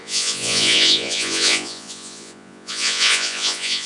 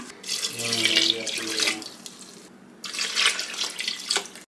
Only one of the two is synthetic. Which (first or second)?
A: first